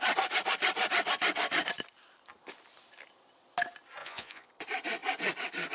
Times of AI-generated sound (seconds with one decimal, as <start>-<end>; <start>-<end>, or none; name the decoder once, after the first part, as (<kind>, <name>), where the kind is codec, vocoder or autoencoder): 4.0-4.5 (vocoder, Vocos)